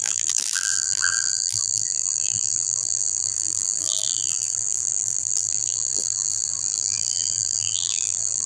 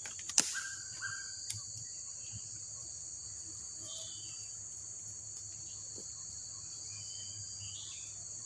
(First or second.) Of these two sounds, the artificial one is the first